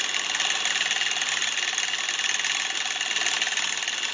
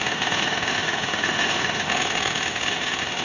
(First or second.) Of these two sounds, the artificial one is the second